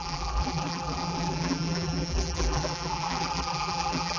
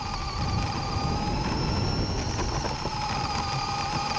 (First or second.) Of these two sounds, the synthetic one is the first